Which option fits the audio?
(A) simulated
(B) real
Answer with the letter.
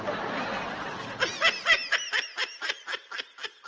B